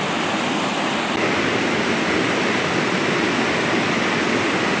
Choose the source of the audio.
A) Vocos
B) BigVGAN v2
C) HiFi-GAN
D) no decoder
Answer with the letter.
D